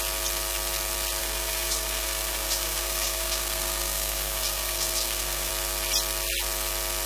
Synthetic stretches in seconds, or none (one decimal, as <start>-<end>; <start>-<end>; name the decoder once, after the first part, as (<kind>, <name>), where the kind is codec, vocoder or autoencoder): 1.2-5.5 (codec, SNAC)